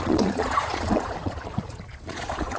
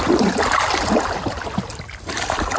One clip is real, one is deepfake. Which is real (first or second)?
second